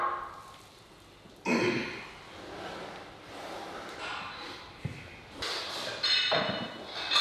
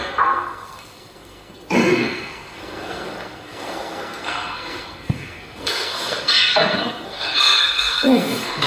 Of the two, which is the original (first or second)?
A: first